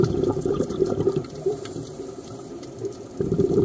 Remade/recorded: remade